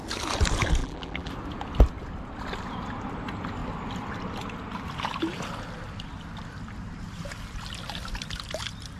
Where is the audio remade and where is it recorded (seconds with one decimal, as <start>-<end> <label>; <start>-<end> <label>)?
0.0-0.8 recorded; 0.8-1.3 remade; 1.3-9.0 recorded